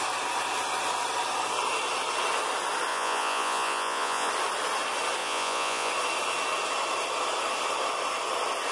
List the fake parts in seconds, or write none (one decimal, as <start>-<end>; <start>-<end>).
2.9-4.3; 5.2-5.9